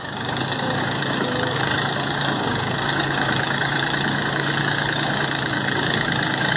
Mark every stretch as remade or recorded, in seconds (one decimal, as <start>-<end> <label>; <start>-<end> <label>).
0.0-6.6 remade